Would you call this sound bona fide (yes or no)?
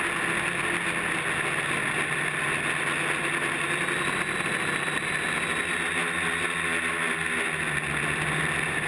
yes